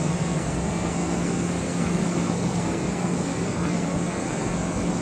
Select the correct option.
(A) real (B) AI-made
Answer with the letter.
B